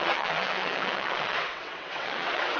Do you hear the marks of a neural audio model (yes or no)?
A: yes